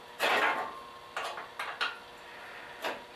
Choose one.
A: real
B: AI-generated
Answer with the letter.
A